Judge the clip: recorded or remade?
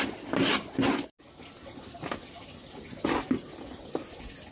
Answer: recorded